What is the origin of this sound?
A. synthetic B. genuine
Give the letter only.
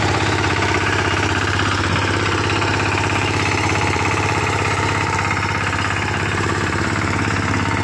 A